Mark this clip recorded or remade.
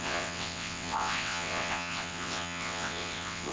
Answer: remade